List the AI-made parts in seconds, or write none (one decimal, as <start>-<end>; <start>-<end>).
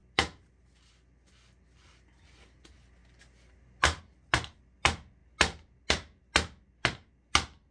none